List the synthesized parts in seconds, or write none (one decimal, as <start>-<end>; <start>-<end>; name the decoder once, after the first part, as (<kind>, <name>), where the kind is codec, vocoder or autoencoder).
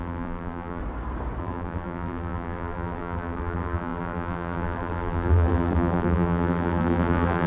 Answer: 0.0-0.8 (vocoder, BigVGAN v2); 1.4-7.5